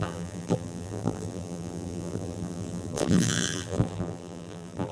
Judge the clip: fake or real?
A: fake